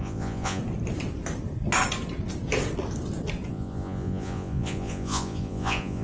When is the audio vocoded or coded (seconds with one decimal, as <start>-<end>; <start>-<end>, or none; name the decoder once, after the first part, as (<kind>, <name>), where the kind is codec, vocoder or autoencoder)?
0.0-0.6 (vocoder, Vocos); 3.5-6.0